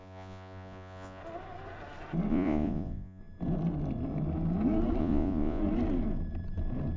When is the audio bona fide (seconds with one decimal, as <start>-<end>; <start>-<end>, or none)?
1.2-2.3; 3.2-5.0; 5.6-7.0